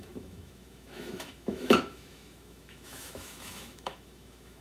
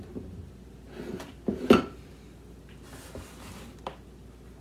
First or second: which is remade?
first